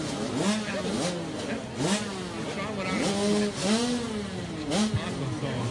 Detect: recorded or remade recorded